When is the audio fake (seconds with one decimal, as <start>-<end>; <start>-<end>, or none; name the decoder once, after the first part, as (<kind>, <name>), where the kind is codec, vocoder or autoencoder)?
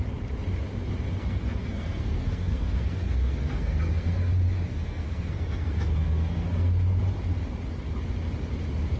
1.2-4.3 (codec, SNAC); 4.7-7.0